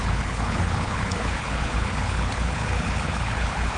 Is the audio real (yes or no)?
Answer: no